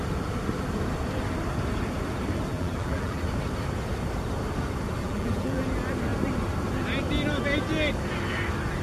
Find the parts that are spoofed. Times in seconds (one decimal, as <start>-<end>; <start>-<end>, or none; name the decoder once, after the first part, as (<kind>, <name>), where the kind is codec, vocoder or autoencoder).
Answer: 2.5-3.2 (vocoder, BigVGAN v2); 5.0-5.6